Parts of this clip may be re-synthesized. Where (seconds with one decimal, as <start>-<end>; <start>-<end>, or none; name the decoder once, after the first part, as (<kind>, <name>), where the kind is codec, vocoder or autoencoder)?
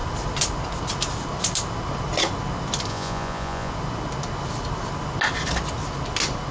2.9-3.7 (vocoder, Vocos)